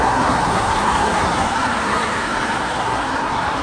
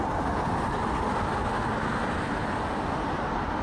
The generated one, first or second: first